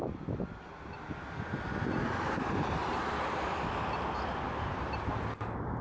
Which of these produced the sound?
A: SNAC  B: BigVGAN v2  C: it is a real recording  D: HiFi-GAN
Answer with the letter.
C